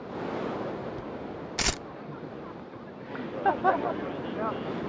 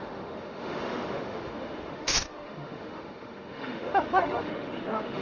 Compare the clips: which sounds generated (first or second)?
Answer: second